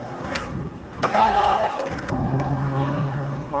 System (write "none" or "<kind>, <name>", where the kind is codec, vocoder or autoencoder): codec, SNAC